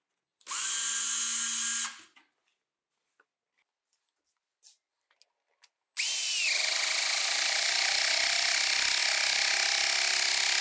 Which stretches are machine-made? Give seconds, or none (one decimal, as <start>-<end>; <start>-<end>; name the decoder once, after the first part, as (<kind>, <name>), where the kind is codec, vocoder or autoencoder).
none